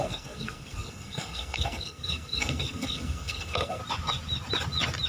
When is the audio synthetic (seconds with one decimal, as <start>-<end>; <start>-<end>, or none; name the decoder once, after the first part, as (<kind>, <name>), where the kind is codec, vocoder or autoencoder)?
0.0-3.8 (codec, SNAC)